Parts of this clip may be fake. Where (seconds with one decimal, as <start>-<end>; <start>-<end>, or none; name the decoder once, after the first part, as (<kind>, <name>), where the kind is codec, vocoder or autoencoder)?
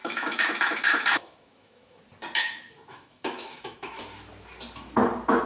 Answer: 0.0-2.0 (autoencoder, DAC-VAE); 2.4-4.0